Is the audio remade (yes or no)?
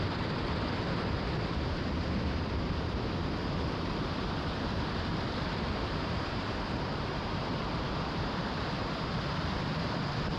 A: yes